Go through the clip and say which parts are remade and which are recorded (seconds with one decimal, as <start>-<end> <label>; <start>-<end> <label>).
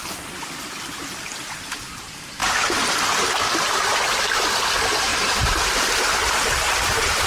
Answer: 0.0-7.3 recorded